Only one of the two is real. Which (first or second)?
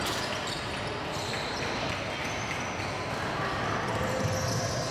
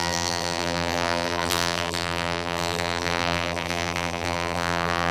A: first